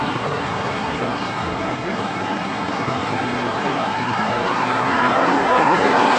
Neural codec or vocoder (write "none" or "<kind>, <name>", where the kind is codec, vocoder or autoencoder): codec, SNAC